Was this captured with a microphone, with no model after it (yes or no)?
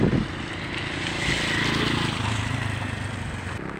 yes